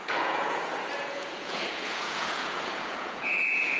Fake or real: fake